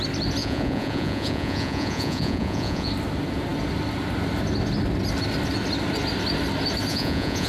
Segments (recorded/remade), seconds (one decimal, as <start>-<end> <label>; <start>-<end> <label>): 0.0-0.4 recorded; 0.4-2.9 remade; 2.9-6.9 recorded; 6.9-7.5 remade